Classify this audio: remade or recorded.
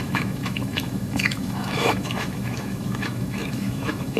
remade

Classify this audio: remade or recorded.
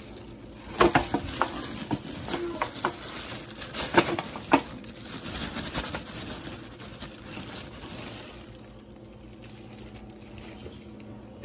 recorded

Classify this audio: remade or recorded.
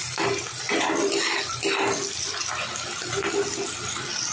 recorded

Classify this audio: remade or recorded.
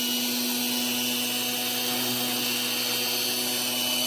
recorded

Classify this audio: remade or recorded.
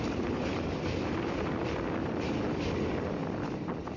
recorded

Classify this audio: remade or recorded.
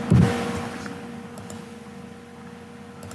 recorded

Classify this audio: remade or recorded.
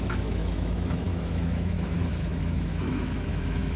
remade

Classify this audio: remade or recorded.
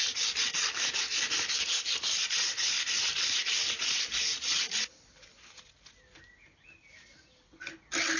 recorded